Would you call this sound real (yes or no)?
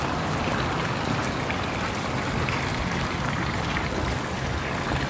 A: yes